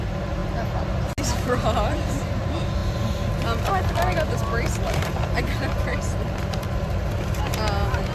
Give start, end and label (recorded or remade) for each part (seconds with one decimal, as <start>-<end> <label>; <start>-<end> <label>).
0.0-8.1 recorded